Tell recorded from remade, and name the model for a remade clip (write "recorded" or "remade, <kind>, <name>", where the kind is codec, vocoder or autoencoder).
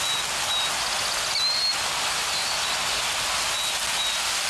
recorded